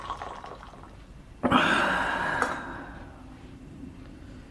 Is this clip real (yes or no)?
yes